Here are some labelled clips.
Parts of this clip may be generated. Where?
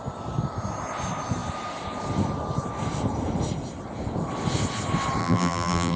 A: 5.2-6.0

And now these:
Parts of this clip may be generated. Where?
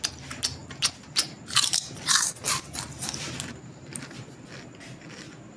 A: 0.6-4.0